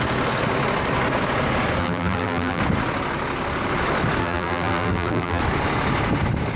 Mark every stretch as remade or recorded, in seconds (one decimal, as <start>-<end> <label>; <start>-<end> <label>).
0.0-1.8 recorded; 1.8-2.6 remade; 2.6-4.2 recorded; 4.2-5.4 remade; 5.4-6.6 recorded